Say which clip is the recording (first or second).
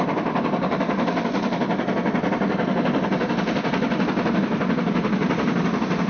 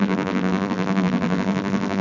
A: first